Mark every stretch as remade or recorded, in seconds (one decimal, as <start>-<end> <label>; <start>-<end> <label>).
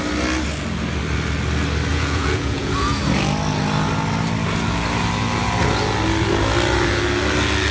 0.0-1.9 recorded; 1.9-3.0 remade; 3.0-7.7 recorded